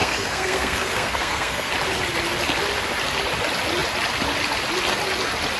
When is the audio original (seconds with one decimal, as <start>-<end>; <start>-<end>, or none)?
1.7-5.6